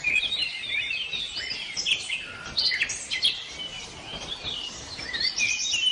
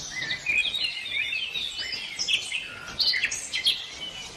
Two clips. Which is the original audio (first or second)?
second